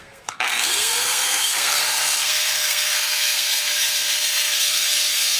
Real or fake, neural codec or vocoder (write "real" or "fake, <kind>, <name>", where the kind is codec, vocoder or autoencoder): fake, codec, SNAC